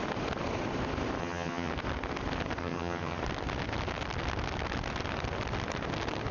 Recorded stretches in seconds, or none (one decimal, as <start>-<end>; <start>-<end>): 0.0-1.2; 1.7-2.6; 3.2-6.3